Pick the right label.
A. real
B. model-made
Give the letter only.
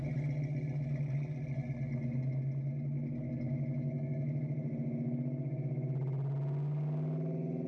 A